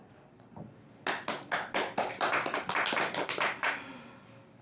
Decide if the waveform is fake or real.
real